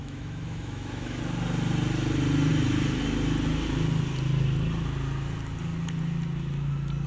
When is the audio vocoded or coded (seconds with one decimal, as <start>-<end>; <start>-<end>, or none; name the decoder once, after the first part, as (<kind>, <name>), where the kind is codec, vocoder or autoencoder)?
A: 0.0-1.2 (autoencoder, DAC-VAE)